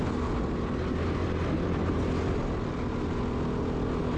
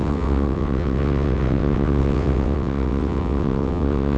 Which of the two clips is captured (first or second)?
first